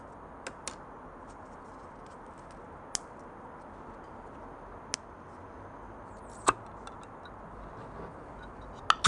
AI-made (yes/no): no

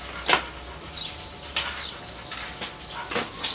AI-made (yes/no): no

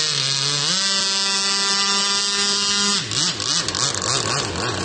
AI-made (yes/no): no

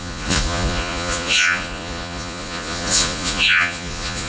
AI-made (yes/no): yes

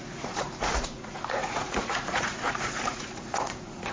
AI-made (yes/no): yes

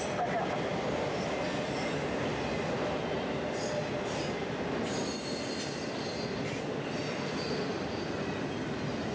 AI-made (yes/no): no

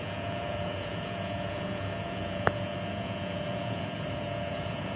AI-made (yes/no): yes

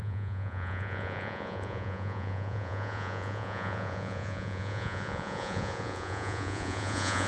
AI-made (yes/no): yes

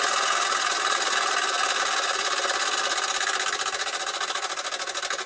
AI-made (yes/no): no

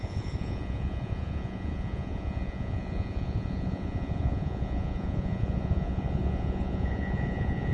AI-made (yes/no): yes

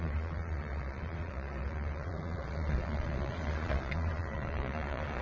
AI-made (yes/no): yes